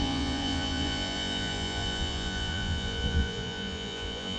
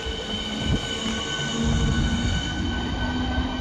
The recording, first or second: second